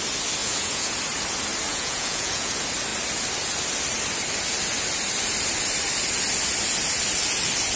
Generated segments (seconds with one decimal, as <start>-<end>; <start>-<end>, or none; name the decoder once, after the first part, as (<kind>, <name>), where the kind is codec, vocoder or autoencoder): 0.4-0.9 (vocoder, Vocos); 1.7-2.5